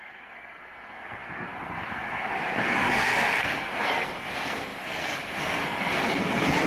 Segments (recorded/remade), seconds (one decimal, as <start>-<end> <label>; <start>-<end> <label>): 0.0-6.7 remade